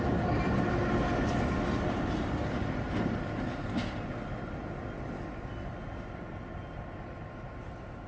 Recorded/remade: recorded